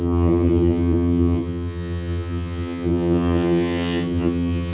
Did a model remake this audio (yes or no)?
yes